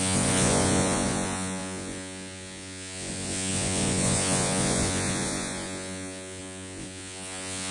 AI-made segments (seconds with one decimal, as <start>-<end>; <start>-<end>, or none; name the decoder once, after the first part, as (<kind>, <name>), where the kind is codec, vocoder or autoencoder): 0.0-7.7 (vocoder, Vocos)